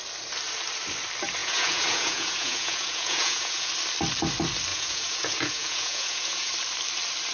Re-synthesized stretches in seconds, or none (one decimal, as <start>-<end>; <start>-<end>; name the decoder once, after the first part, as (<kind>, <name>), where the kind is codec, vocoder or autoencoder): 1.4-3.7 (vocoder, Vocos); 4.7-6.5